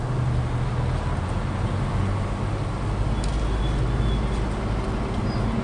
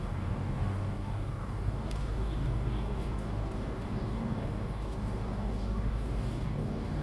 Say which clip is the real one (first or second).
first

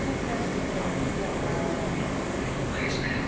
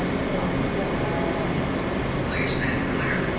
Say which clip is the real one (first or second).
second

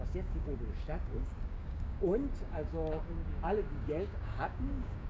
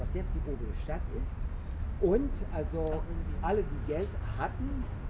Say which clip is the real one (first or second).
second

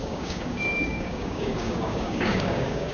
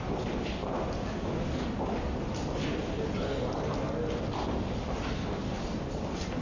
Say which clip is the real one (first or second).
second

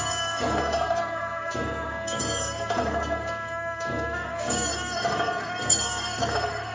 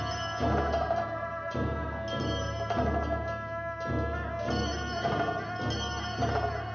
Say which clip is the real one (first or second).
second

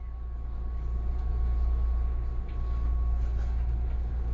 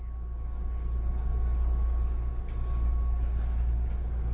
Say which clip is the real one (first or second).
first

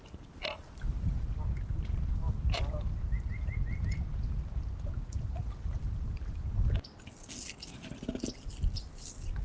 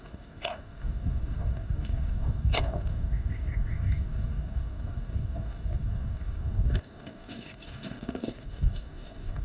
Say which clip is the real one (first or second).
first